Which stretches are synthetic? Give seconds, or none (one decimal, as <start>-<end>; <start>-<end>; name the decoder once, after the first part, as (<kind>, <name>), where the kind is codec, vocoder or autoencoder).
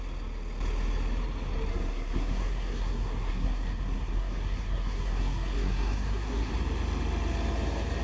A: 1.7-6.5 (codec, SNAC)